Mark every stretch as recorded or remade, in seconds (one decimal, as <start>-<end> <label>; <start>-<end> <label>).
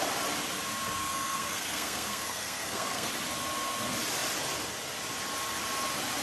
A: 0.0-1.0 recorded; 1.0-3.1 remade; 3.1-6.2 recorded